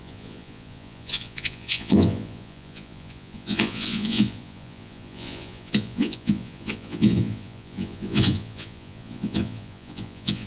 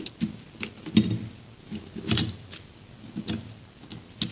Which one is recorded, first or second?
second